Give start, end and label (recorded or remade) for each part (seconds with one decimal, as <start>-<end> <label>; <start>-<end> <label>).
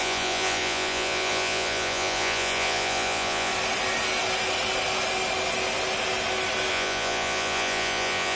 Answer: 0.0-3.5 remade; 3.5-6.7 recorded; 6.7-8.4 remade